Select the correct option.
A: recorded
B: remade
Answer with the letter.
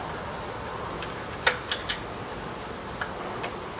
A